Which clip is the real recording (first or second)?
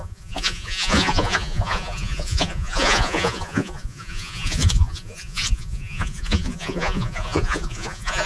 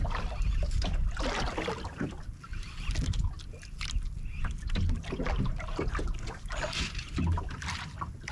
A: second